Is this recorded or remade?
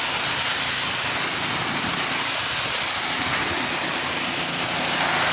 recorded